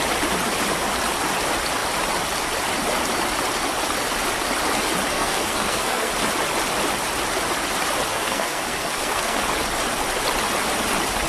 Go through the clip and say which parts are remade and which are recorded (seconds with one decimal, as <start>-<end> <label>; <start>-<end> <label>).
0.0-5.1 recorded; 5.1-6.1 remade; 6.1-8.1 recorded; 8.1-9.4 remade; 9.4-11.3 recorded